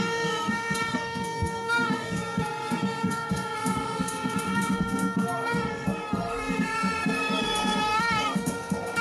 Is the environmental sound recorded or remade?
remade